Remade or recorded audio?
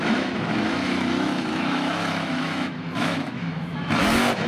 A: remade